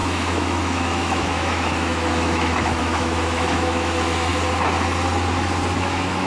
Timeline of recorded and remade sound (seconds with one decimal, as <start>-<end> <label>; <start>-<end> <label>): 0.0-4.3 remade; 4.3-5.8 recorded; 5.8-6.3 remade